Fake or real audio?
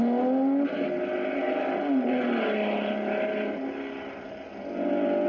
real